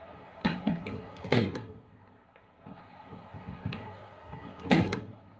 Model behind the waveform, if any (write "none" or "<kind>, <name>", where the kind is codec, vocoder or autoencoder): codec, SNAC